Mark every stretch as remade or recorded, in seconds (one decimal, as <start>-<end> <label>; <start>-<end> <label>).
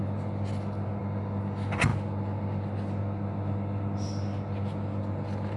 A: 0.0-5.6 recorded